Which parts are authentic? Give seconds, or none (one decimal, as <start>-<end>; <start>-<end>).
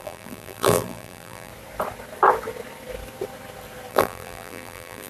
1.5-3.9